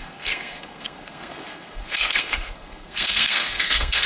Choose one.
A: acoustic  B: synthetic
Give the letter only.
B